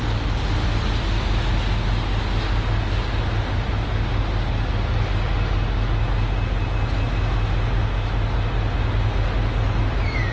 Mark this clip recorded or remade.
recorded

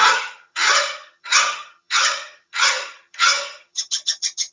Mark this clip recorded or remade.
remade